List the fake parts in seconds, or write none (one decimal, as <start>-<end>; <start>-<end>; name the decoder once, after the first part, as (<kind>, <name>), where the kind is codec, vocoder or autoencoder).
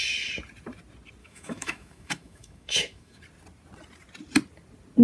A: 1.2-3.2 (autoencoder, DAC-VAE)